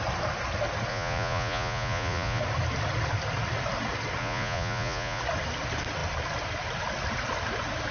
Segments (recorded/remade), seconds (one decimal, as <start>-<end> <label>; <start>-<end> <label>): 0.0-0.9 recorded; 0.9-2.4 remade; 2.4-4.2 recorded; 4.2-5.2 remade; 5.2-7.9 recorded